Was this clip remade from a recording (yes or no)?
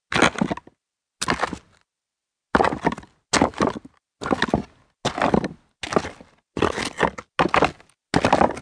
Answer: no